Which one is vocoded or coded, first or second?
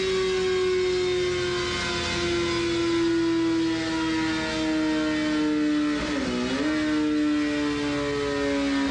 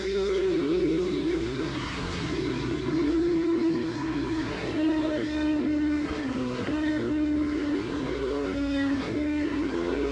second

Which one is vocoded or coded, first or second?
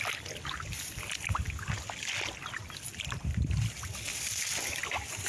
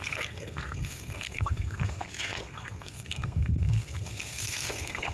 second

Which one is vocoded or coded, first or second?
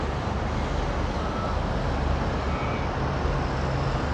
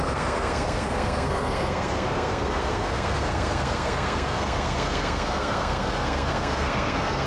second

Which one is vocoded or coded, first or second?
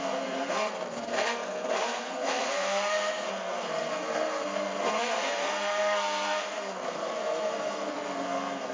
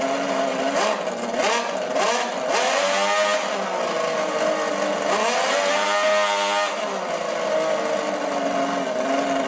first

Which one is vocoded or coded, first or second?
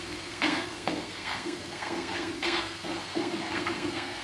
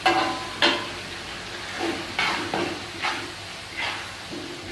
first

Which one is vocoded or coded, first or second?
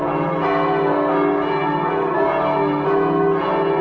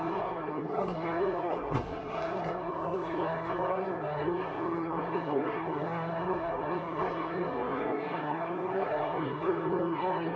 second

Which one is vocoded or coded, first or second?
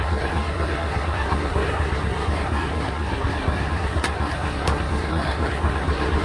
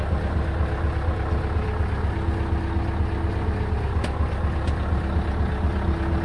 first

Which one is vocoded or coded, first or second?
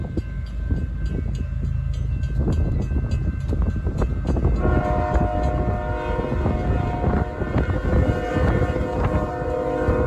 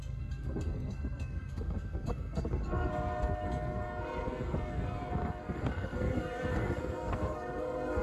second